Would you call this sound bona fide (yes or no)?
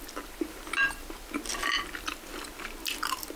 yes